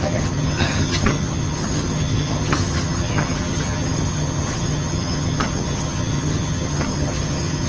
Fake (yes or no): yes